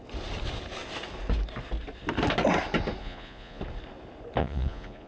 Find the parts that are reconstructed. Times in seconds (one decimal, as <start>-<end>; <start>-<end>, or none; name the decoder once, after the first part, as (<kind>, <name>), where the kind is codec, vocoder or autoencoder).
3.0-3.6 (vocoder, Vocos); 4.4-5.1

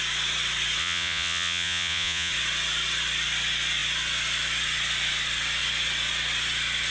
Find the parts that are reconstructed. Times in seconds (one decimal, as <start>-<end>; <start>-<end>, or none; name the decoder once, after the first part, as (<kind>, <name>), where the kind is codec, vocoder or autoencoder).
0.8-2.3 (vocoder, Vocos)